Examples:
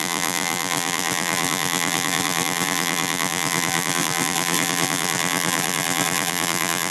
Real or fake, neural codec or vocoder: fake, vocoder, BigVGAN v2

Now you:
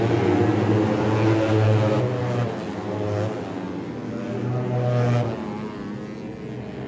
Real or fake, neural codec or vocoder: real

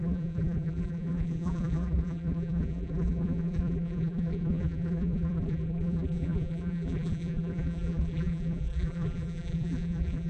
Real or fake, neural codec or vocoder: fake, vocoder, BigVGAN v2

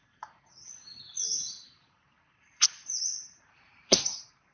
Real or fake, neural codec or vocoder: fake, vocoder, BigVGAN v2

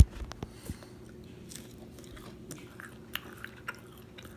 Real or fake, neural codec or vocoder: real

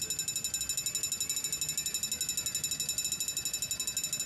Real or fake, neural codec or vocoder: real